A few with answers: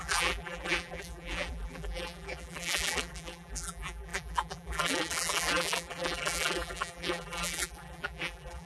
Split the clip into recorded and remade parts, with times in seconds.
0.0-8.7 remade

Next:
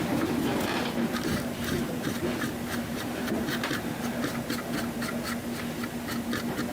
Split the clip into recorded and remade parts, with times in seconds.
0.0-0.8 recorded; 0.8-3.9 remade; 3.9-6.7 recorded

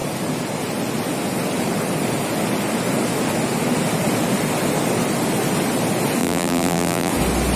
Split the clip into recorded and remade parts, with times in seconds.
0.0-6.2 recorded; 6.2-7.1 remade; 7.1-7.6 recorded

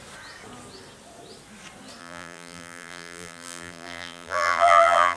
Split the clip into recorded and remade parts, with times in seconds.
0.0-2.0 recorded; 2.0-5.2 remade

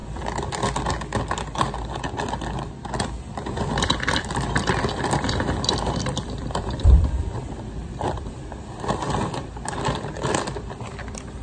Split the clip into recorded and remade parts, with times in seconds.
0.0-2.7 recorded; 2.7-11.4 remade

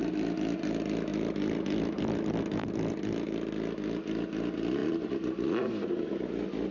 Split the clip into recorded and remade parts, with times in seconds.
0.0-1.1 recorded; 1.1-2.4 remade; 2.4-6.7 recorded

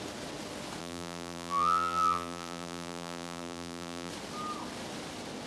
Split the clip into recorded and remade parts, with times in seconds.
0.0-0.8 recorded; 0.8-4.1 remade; 4.1-5.5 recorded

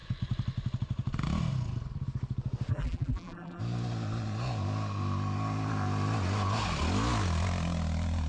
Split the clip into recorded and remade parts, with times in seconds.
0.0-2.7 recorded; 2.7-3.6 remade; 3.6-8.3 recorded